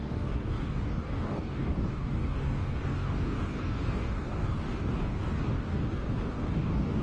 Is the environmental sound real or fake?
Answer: fake